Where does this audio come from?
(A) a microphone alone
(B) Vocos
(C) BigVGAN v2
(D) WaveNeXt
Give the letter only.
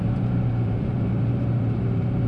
C